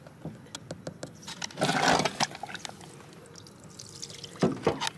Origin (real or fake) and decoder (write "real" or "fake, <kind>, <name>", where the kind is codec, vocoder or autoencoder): real